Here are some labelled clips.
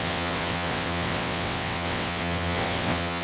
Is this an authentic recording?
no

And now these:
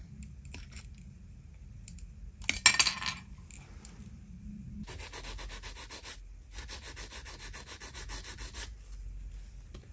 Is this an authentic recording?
yes